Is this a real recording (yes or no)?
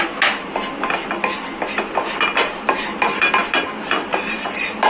yes